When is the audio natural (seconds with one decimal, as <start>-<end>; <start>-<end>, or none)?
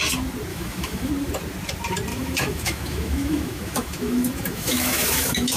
0.0-0.5; 1.1-2.1